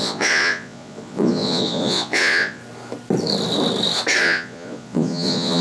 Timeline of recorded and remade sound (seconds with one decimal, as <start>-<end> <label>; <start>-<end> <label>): 0.0-2.6 remade; 2.6-4.2 recorded; 4.2-5.6 remade